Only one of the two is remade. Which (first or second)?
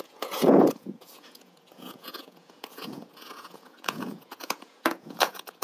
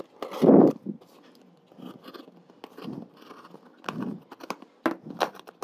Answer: first